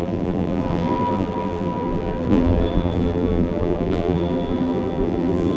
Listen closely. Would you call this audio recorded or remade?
remade